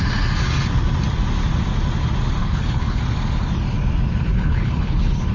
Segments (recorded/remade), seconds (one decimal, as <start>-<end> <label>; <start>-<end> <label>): 0.0-2.4 recorded; 2.4-3.0 remade; 3.0-4.3 recorded; 4.3-5.3 remade